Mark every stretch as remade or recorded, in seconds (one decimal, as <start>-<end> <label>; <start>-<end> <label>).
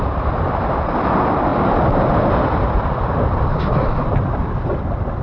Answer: 0.0-5.2 recorded